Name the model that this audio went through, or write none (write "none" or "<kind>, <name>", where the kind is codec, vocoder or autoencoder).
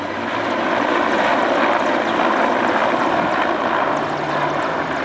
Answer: none